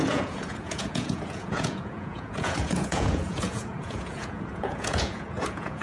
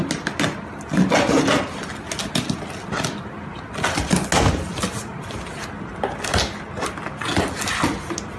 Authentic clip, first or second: second